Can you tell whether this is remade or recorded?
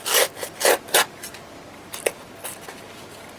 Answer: recorded